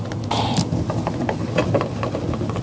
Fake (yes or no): no